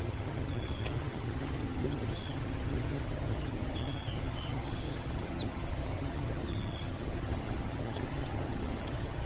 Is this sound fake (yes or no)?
yes